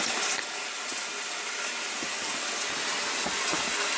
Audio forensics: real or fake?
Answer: real